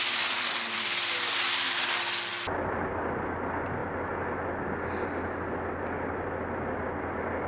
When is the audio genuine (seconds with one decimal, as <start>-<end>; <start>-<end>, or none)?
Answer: 0.0-7.5